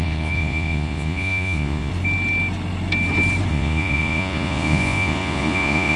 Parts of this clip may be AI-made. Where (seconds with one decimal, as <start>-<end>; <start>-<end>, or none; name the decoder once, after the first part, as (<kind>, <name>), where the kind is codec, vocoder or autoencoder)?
0.0-1.9 (vocoder, Vocos); 3.5-6.0